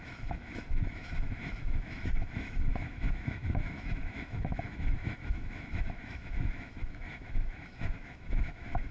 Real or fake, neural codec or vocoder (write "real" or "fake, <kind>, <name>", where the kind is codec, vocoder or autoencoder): fake, autoencoder, DAC-VAE